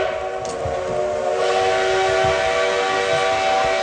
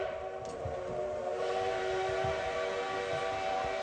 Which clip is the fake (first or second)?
second